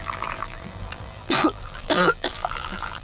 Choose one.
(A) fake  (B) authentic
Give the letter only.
A